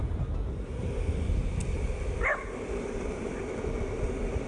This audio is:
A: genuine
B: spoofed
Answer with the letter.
A